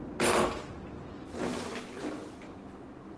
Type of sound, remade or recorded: recorded